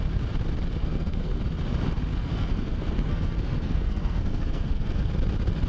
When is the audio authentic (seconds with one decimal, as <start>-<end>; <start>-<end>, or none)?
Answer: 0.0-0.8; 1.4-2.1; 5.1-5.7

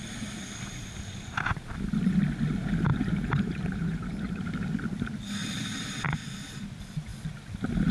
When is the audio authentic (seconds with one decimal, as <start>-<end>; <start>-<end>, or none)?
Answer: 0.0-2.9; 4.4-5.4; 6.0-7.9

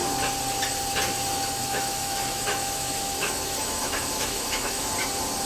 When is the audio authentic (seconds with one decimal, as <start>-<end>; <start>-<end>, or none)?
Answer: 0.0-1.6; 4.9-5.5

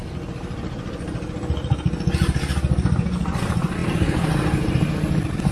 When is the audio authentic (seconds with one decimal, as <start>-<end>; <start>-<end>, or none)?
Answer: 0.0-3.8

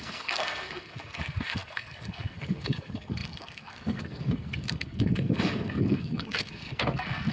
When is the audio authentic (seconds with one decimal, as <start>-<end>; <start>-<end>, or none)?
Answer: none

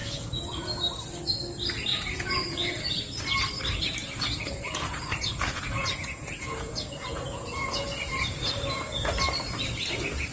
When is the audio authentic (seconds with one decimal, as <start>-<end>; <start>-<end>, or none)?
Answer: 0.7-1.9; 3.0-4.0; 9.1-10.3

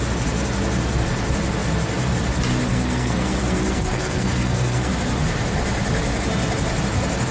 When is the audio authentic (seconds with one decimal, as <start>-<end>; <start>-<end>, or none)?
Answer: 0.0-2.7; 4.9-7.3